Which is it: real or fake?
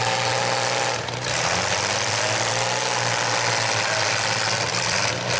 real